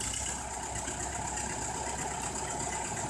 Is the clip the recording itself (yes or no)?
yes